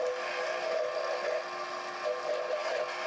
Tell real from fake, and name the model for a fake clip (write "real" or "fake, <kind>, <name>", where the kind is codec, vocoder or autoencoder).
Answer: real